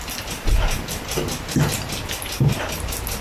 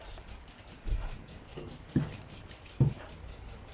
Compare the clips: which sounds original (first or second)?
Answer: first